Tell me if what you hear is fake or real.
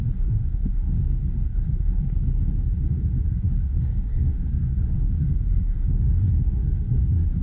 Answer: fake